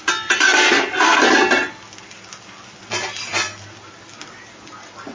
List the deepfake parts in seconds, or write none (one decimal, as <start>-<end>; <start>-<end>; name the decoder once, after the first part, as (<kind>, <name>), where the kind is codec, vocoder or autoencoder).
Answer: 0.5-1.2 (vocoder, BigVGAN v2)